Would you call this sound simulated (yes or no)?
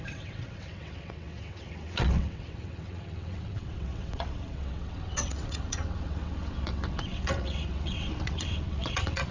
yes